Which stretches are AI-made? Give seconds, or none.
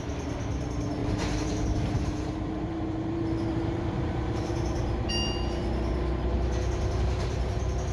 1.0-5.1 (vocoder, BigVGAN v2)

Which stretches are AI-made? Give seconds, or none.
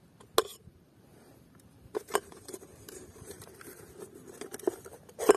0.5-3.7 (vocoder, BigVGAN v2)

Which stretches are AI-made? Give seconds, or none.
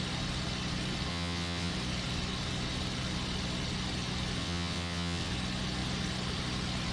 1.1-1.7 (vocoder, WaveNeXt); 4.4-5.3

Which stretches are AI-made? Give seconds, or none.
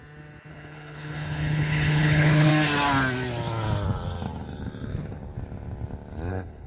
0.5-2.5 (codec, HILCodec); 6.3-6.7